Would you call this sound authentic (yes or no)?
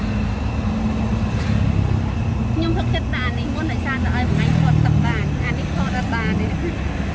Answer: yes